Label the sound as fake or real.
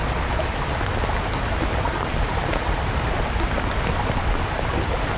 real